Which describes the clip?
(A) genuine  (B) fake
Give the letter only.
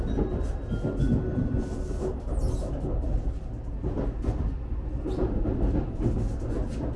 A